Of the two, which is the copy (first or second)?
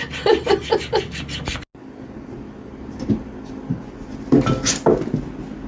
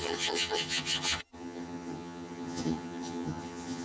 second